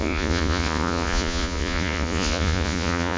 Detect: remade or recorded remade